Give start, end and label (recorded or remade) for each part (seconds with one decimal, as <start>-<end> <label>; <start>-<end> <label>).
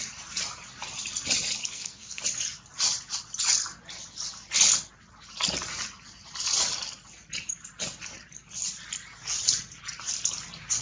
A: 0.0-1.6 recorded; 1.6-2.2 remade; 2.2-10.8 recorded